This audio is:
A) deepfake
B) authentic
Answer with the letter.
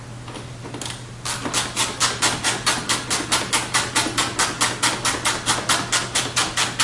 B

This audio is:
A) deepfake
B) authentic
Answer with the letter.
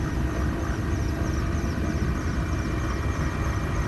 A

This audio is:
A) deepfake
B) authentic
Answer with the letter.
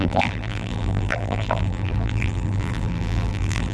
A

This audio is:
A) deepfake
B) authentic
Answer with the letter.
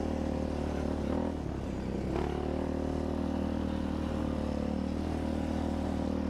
B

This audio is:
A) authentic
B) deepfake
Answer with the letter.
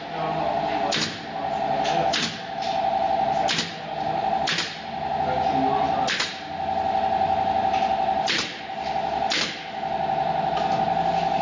A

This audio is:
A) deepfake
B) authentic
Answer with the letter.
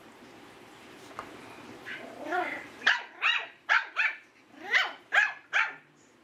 A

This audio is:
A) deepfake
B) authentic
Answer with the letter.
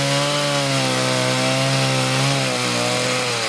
B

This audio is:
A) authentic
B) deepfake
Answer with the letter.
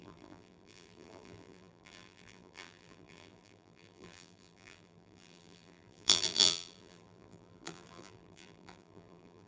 B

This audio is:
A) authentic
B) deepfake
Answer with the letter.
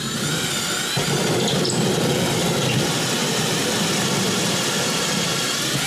B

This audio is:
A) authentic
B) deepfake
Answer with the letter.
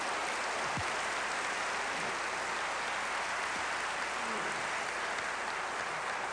A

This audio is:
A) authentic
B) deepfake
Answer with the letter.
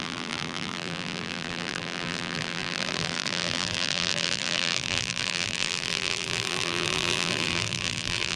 B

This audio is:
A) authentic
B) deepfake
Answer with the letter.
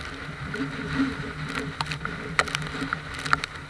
A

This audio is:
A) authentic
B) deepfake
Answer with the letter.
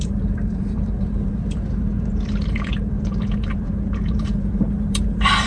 B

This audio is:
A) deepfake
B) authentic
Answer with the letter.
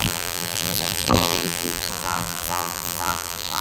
A